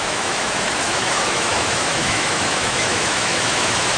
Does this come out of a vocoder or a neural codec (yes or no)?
yes